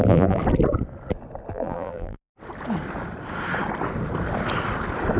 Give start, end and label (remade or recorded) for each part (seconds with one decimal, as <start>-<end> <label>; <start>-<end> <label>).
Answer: 0.0-0.4 remade; 0.4-1.5 recorded; 1.5-2.3 remade; 2.3-5.2 recorded